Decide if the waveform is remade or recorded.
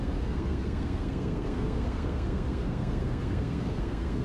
remade